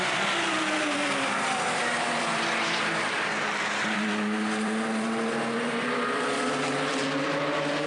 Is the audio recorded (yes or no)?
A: no